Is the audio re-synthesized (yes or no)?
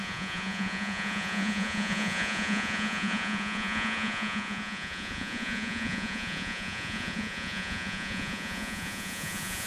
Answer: yes